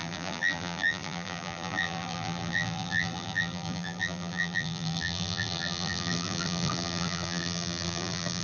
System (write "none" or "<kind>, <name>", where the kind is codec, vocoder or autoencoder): vocoder, BigVGAN v2